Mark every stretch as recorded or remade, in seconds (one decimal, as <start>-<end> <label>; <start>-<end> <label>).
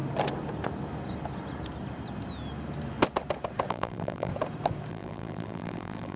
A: 0.0-3.7 recorded; 3.7-4.3 remade; 4.3-4.9 recorded; 4.9-6.2 remade